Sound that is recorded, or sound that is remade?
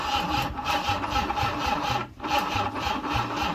remade